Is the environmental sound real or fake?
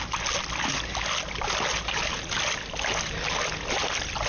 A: real